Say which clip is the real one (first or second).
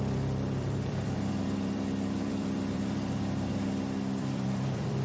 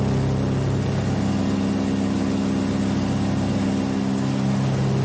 second